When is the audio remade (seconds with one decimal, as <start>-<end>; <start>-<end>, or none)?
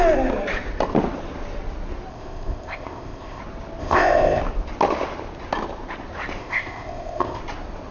2.1-3.4; 3.8-4.4; 6.4-7.4